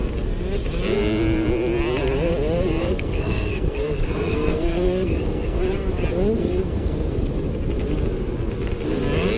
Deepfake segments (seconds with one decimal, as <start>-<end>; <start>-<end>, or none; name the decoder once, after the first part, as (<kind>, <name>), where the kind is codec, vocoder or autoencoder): 2.8-5.6 (codec, SNAC); 6.4-7.2